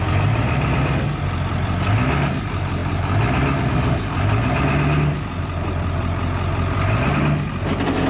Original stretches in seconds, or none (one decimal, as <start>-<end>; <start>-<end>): 0.0-8.1